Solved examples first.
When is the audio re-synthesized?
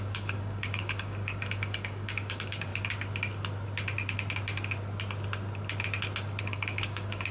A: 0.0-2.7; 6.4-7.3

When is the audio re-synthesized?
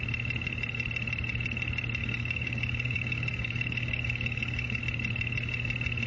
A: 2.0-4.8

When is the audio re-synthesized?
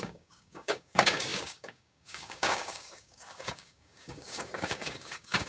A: 0.0-5.5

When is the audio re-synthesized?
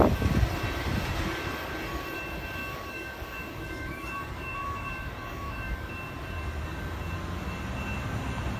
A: 2.6-5.9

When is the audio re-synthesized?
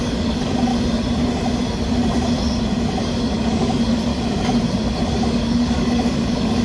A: 0.0-0.7; 3.0-4.1; 5.1-6.6